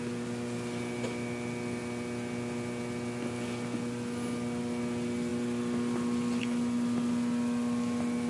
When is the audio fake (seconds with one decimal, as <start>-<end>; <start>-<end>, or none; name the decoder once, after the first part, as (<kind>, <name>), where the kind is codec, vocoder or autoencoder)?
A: none